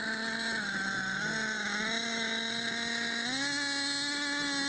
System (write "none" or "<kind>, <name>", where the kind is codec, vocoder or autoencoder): none